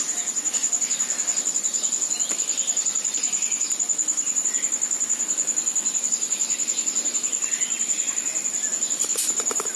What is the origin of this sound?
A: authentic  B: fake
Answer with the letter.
A